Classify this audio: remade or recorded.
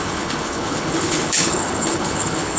remade